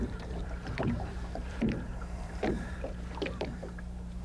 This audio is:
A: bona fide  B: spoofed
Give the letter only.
B